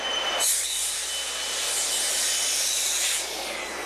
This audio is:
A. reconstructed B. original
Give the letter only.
B